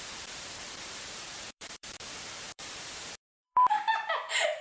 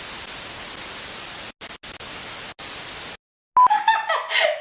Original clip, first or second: second